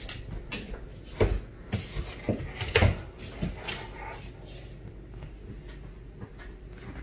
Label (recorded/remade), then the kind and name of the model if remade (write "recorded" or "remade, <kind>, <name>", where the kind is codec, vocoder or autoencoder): recorded